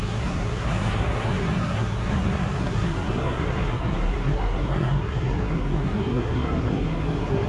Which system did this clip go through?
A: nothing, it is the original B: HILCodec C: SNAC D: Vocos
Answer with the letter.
C